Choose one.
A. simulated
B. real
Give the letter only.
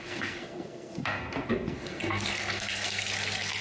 A